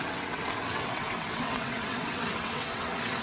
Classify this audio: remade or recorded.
remade